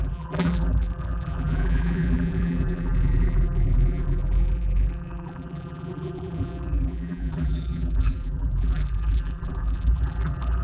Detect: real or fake fake